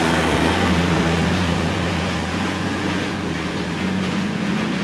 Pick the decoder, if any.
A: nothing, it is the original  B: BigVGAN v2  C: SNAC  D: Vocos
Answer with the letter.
D